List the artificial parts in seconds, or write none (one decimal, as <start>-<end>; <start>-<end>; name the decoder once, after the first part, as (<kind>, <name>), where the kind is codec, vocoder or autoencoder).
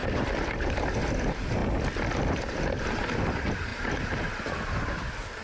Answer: 0.0-1.6 (vocoder, BigVGAN v2); 2.2-5.4